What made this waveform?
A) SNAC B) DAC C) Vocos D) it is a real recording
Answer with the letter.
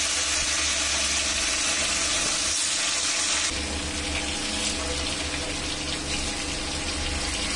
D